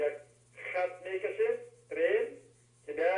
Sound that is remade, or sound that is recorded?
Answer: recorded